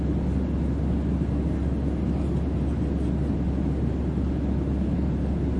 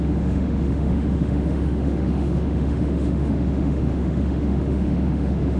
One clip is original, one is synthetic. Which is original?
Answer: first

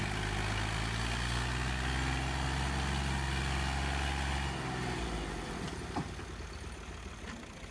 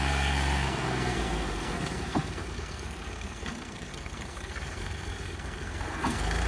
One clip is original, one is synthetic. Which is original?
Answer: first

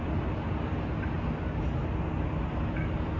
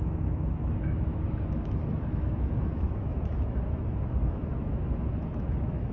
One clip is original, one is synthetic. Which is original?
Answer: first